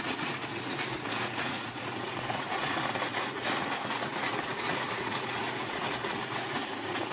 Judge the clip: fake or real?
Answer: fake